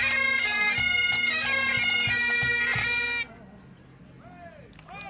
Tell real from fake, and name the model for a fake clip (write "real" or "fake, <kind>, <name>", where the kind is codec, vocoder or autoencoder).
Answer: real